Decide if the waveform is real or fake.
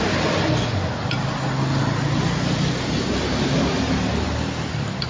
real